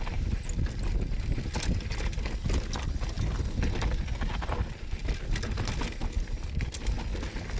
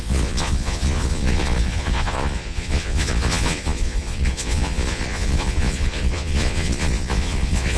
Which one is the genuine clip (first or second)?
first